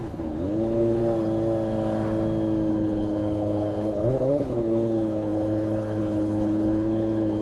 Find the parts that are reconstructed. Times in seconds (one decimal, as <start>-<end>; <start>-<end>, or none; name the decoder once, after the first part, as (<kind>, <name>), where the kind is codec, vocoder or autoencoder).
0.0-1.0 (codec, HILCodec); 2.7-7.4